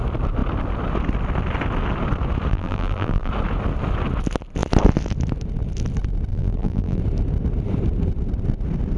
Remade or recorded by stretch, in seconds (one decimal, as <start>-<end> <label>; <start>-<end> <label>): 0.0-2.5 recorded; 2.5-3.3 remade; 3.3-6.3 recorded; 6.3-7.0 remade; 7.0-9.0 recorded